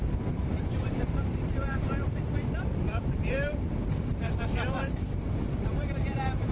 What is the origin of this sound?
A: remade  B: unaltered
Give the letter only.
A